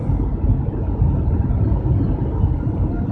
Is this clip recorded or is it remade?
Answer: recorded